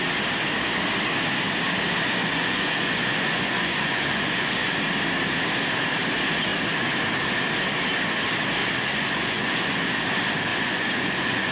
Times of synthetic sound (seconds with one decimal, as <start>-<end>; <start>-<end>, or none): 2.2-4.7; 8.6-9.9; 10.5-11.5